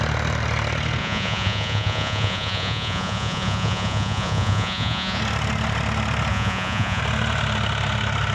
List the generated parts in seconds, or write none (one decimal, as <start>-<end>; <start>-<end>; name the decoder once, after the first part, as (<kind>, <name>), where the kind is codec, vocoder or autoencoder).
1.0-5.2 (vocoder, Vocos); 6.3-7.0